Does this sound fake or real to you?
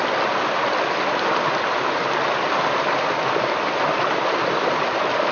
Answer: real